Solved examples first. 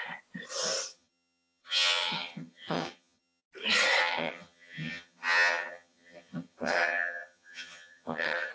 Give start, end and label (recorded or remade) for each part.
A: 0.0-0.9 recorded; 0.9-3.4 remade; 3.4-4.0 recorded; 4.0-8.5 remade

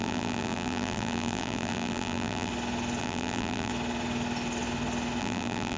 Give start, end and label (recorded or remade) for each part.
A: 0.0-2.5 remade; 2.5-3.0 recorded; 3.0-3.7 remade; 3.7-5.2 recorded; 5.2-5.8 remade

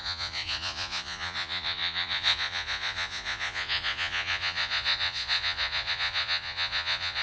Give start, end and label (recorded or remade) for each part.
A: 0.0-7.2 remade